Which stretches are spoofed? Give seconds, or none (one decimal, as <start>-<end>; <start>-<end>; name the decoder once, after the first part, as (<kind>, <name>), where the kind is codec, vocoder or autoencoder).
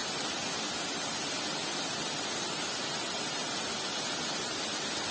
none